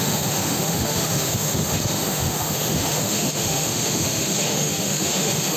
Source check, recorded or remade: remade